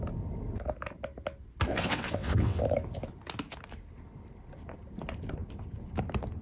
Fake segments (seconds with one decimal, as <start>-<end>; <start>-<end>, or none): 1.7-2.6